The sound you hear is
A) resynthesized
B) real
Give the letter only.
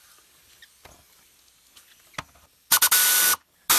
B